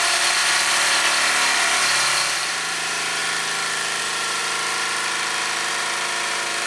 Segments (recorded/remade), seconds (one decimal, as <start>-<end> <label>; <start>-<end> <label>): 0.0-0.4 remade; 0.4-2.3 recorded; 2.3-3.2 remade; 3.2-4.0 recorded; 4.0-4.4 remade; 4.4-5.7 recorded; 5.7-6.7 remade